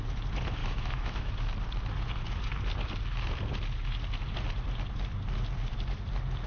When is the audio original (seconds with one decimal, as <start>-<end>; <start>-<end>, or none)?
0.0-0.6; 1.3-6.5